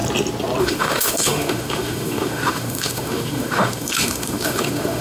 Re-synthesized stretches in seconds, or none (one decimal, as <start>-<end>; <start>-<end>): 0.6-5.0